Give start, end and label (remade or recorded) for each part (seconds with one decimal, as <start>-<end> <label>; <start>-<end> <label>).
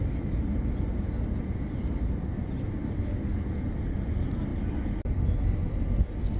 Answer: 0.0-6.4 recorded